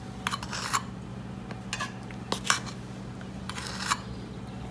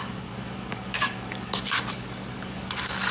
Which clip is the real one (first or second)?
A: first